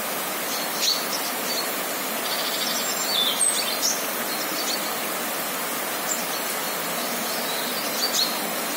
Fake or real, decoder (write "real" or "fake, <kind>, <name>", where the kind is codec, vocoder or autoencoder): real